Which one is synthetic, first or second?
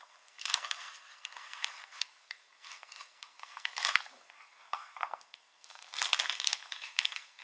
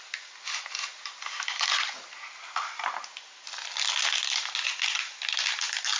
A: first